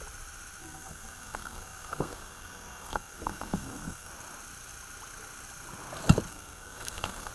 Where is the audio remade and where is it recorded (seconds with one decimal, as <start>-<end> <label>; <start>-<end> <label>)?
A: 0.0-0.6 recorded; 0.6-4.1 remade; 4.1-6.3 recorded; 6.3-7.3 remade